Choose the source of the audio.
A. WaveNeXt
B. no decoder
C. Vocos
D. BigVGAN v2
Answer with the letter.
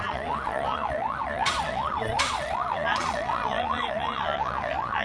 C